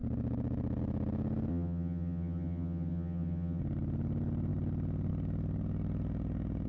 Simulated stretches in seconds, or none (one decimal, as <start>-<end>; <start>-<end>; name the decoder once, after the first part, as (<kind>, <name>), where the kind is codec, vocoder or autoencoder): 1.5-3.6 (vocoder, HiFi-GAN)